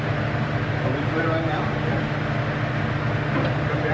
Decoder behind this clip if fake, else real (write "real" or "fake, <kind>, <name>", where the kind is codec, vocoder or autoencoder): real